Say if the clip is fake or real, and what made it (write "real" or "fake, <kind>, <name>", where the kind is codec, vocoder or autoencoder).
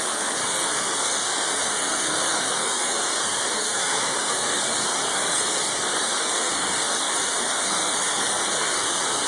fake, codec, SNAC